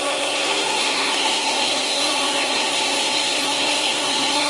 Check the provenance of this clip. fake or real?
fake